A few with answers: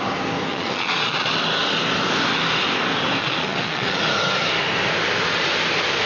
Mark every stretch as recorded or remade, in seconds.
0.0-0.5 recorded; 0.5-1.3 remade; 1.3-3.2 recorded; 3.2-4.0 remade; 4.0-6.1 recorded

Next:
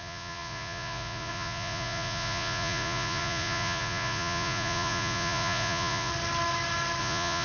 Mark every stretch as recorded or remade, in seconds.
0.0-6.1 remade; 6.1-7.0 recorded; 7.0-7.4 remade

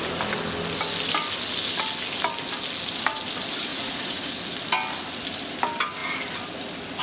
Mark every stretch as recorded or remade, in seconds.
0.0-3.7 recorded; 3.7-4.3 remade; 4.3-7.0 recorded

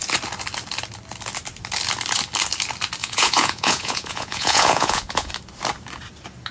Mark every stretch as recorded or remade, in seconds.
0.0-3.0 recorded; 3.0-5.3 remade; 5.3-6.5 recorded

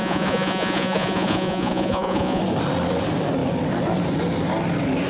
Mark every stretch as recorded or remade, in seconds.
0.0-2.4 remade; 2.4-5.1 recorded